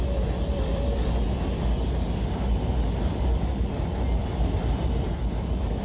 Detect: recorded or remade recorded